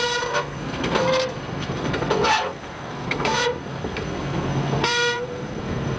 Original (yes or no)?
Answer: no